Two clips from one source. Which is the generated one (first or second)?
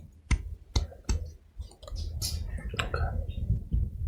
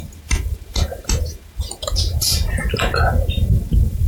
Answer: second